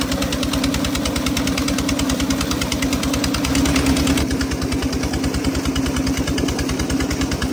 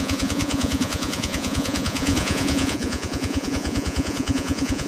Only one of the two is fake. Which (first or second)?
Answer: second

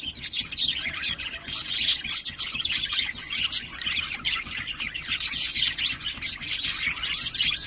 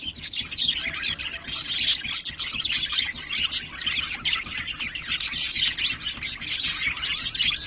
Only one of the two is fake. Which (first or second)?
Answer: first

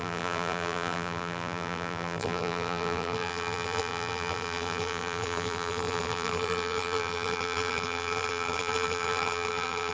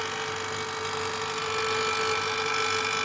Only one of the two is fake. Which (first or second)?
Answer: first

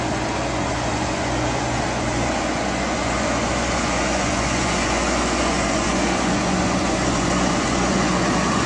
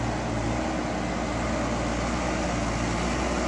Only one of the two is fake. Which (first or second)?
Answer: first